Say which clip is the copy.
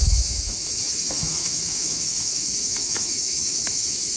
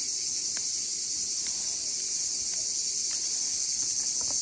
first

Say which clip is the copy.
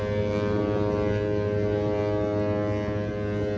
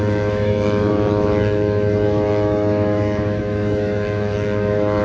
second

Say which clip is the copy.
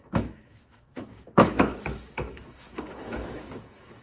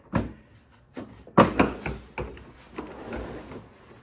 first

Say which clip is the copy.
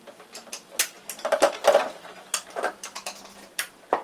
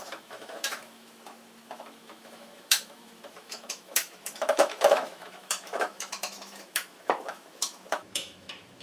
second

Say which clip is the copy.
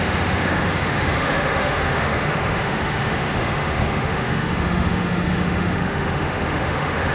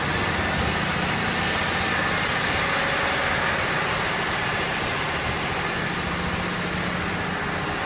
first